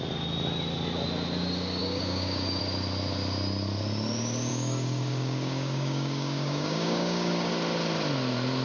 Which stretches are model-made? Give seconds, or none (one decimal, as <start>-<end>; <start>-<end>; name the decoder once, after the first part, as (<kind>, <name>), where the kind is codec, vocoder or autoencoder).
1.8-2.6 (codec, DAC); 4.5-7.5